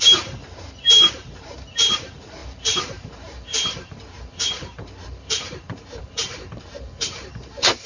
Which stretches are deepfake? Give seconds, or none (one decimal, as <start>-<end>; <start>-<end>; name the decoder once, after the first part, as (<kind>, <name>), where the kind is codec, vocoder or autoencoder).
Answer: 0.0-7.9 (vocoder, BigVGAN v2)